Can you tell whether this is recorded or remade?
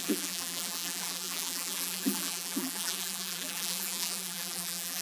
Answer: remade